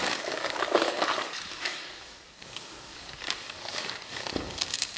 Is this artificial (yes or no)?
yes